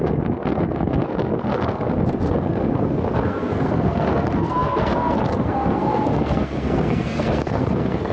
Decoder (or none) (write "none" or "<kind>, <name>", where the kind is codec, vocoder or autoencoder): codec, SNAC